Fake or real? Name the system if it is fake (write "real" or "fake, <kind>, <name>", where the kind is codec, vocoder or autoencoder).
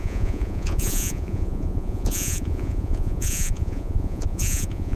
fake, vocoder, Vocos